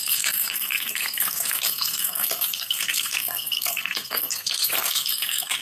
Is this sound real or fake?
fake